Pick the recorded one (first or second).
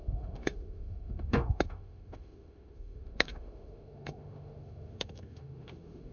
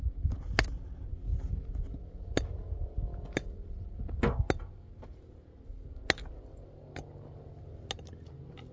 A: second